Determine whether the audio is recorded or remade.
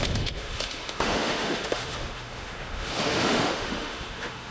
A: remade